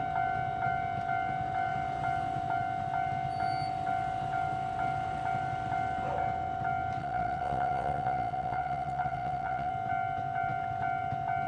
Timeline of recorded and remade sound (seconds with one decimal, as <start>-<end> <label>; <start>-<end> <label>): 0.0-7.0 recorded; 7.0-9.7 remade; 9.7-11.5 recorded

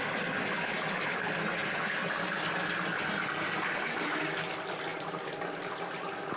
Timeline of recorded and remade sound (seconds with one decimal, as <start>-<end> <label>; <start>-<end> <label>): 0.0-6.4 recorded

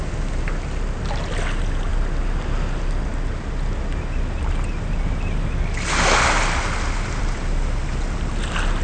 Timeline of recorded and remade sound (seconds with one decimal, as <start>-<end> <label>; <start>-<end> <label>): 0.0-8.8 recorded

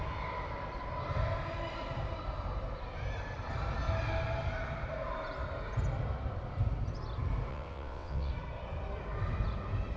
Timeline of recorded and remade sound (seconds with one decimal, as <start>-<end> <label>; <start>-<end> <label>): 0.0-7.5 recorded; 7.5-8.3 remade; 8.3-10.0 recorded

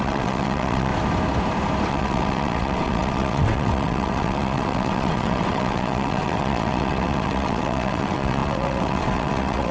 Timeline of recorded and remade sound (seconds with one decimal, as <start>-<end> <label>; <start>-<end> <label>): 0.0-0.9 remade; 0.9-1.9 recorded; 1.9-9.7 remade

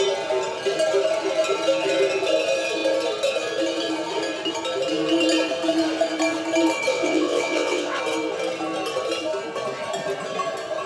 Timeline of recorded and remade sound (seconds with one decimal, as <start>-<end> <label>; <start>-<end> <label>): 0.0-6.9 recorded; 6.9-8.0 remade; 8.0-10.9 recorded